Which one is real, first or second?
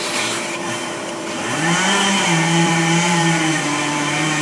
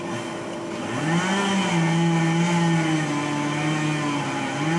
second